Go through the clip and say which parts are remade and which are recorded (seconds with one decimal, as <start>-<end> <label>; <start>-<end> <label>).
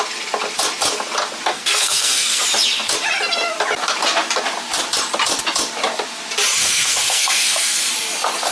0.0-1.5 recorded; 1.5-2.4 remade; 2.4-6.6 recorded; 6.6-7.9 remade; 7.9-8.5 recorded